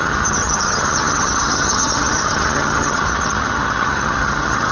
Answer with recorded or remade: remade